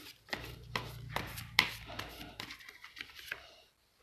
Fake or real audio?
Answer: real